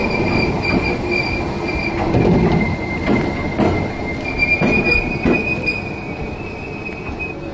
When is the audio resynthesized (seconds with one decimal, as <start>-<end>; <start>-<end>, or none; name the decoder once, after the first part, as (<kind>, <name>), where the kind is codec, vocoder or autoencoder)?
none